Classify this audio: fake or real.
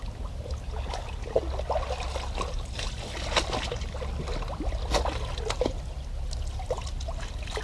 real